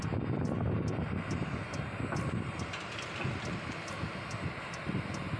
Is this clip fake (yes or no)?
no